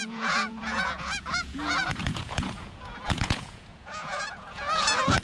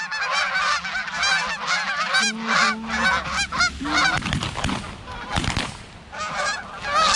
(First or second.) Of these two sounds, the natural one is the second